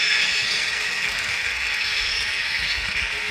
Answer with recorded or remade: remade